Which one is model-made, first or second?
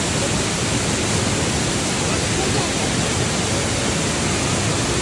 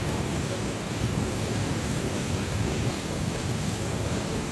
second